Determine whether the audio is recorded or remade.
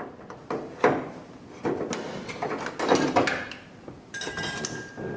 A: recorded